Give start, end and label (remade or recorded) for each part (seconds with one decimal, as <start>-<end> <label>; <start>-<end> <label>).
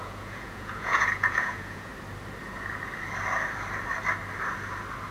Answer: 0.0-1.9 remade; 1.9-5.1 recorded